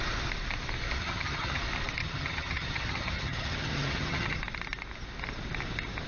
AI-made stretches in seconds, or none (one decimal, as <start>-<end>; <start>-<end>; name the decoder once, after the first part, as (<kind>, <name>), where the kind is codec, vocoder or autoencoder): 1.0-1.6 (vocoder, HiFi-GAN); 2.0-4.4